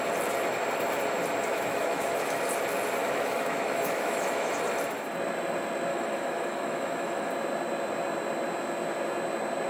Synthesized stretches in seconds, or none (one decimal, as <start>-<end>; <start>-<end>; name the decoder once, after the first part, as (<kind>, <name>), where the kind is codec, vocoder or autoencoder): 1.5-2.4 (autoencoder, DAC-VAE); 3.0-4.5; 5.9-7.3